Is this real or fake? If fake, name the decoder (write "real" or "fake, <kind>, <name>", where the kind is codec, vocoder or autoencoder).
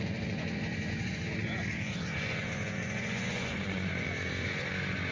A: fake, vocoder, Vocos